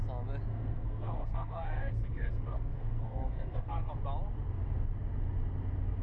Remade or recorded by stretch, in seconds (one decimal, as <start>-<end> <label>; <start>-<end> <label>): 0.0-0.5 recorded; 0.5-3.9 remade; 3.9-6.0 recorded